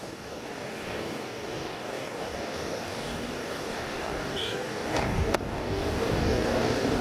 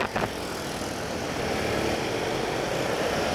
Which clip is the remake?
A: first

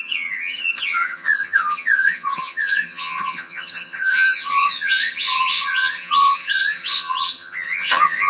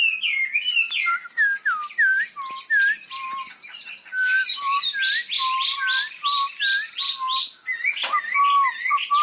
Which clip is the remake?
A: first